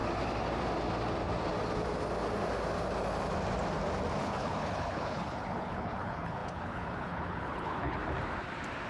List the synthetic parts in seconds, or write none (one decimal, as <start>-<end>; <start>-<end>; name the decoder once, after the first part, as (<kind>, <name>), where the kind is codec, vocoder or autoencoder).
4.2-8.0 (codec, HILCodec)